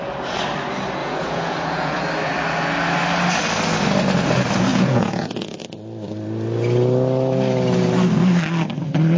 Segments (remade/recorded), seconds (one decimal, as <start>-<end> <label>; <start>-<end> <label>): 0.0-1.0 recorded; 1.0-2.0 remade; 2.0-4.7 recorded; 4.7-5.6 remade; 5.6-9.2 recorded

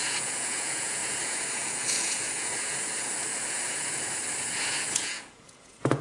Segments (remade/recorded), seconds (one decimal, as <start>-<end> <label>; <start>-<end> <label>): 0.0-6.0 remade

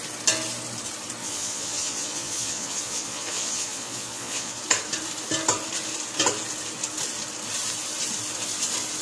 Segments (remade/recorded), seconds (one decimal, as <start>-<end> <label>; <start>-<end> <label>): 0.0-1.2 recorded; 1.2-4.6 remade; 4.6-9.0 recorded

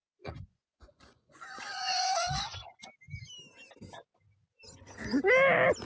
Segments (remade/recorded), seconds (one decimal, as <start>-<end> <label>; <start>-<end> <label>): 0.0-2.7 remade; 2.7-5.8 recorded

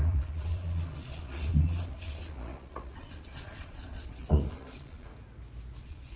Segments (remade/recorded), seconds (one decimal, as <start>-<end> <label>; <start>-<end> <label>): 0.0-5.1 remade; 5.1-5.8 recorded; 5.8-6.2 remade